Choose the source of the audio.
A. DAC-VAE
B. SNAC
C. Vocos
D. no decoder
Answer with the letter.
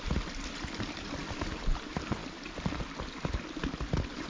D